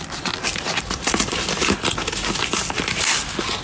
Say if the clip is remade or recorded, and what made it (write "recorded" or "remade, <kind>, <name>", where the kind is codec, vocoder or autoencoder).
recorded